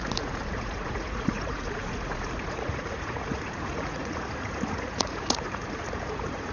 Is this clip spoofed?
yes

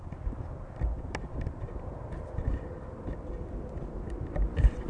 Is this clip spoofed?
no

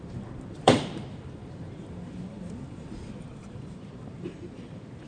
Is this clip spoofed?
yes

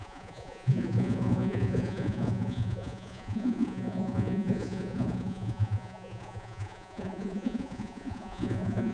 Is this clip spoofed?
yes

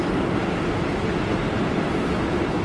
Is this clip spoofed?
no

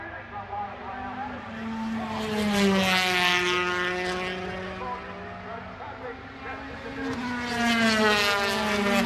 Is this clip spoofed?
no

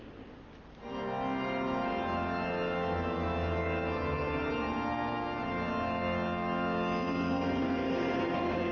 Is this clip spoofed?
no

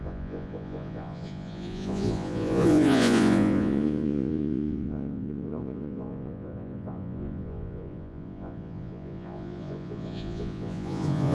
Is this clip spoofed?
yes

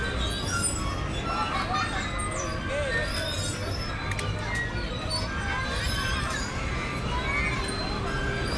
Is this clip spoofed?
no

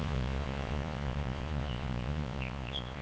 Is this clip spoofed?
yes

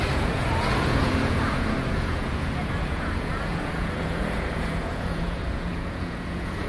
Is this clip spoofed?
yes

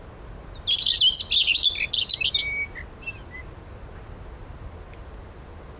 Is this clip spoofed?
no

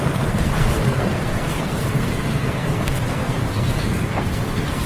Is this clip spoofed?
yes